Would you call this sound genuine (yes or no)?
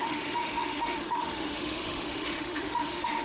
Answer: no